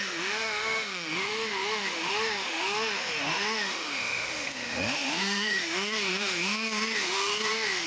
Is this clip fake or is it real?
fake